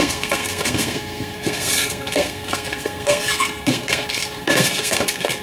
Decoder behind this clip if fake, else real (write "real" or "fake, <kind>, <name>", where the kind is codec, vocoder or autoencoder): fake, codec, SNAC